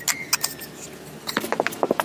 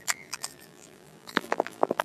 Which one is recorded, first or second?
first